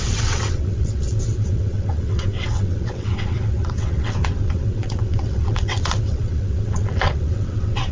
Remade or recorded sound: remade